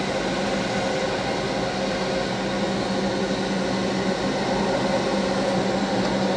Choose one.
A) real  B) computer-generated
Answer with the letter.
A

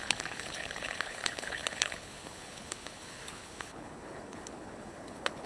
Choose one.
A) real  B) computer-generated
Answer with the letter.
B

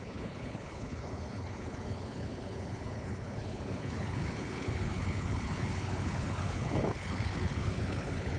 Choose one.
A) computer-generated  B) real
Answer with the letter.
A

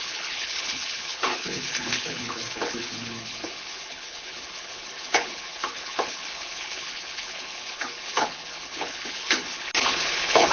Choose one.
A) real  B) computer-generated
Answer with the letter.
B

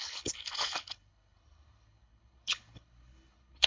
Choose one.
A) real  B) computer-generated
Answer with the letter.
B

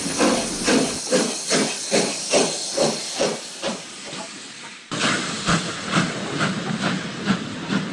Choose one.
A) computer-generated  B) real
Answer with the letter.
B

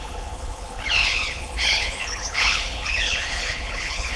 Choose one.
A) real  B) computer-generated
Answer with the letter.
B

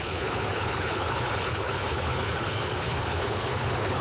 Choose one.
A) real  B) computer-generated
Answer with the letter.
B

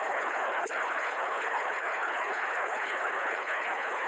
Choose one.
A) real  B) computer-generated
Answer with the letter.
B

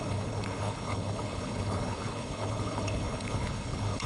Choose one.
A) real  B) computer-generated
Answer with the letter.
B